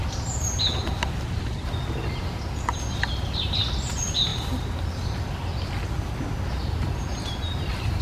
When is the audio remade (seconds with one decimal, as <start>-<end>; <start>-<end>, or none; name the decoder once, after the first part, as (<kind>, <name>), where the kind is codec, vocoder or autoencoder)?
none